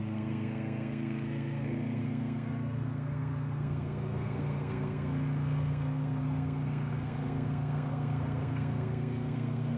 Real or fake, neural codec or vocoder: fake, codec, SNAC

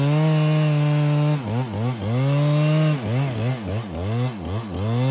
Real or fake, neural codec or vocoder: real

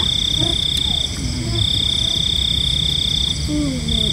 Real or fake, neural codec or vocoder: real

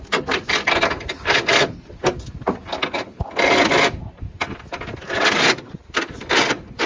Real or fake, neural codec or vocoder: real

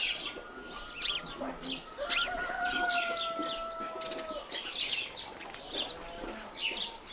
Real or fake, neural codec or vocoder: real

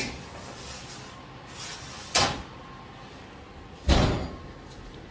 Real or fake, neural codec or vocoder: real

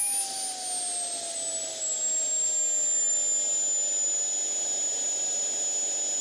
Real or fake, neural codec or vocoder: real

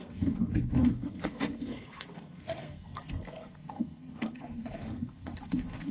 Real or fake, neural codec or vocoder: fake, codec, SNAC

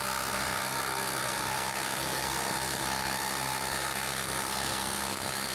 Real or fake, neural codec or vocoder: fake, codec, SNAC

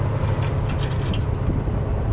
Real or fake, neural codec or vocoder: real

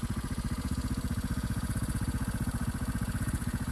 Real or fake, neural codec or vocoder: fake, vocoder, Vocos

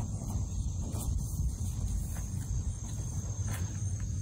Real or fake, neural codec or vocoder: real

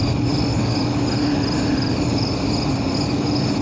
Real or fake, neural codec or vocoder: real